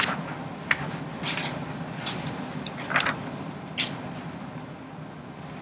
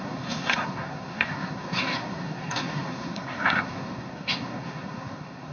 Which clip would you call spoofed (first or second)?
second